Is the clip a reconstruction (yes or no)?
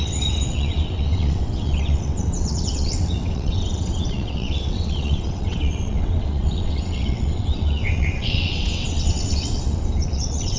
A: yes